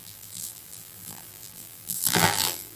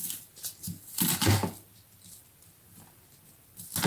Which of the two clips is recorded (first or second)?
second